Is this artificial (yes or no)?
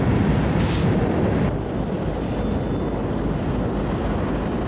no